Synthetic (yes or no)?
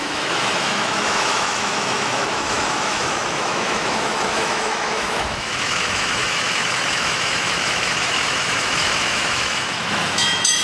yes